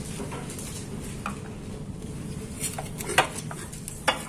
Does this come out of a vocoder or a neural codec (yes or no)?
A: no